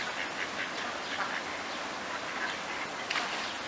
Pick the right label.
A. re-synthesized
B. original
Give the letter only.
B